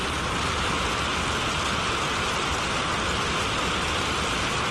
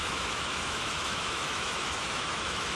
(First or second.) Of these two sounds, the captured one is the first